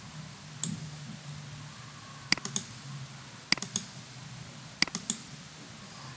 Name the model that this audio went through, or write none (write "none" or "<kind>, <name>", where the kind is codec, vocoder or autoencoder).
none